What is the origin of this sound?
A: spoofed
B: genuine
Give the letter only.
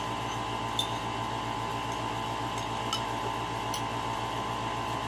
B